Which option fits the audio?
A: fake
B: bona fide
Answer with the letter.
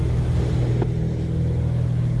B